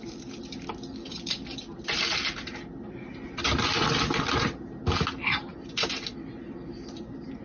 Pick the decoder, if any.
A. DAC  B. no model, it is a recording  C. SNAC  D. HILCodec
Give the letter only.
B